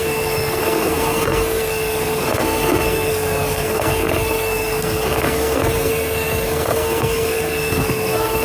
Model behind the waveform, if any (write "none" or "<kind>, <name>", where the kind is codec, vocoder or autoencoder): codec, SNAC